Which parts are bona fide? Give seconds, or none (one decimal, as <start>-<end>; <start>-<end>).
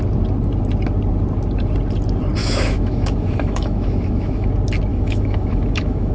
0.0-2.4; 4.5-4.9